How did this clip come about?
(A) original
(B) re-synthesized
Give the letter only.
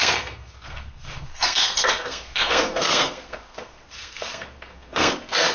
B